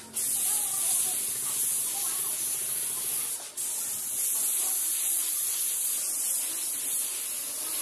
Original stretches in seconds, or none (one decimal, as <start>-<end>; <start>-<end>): 0.0-7.8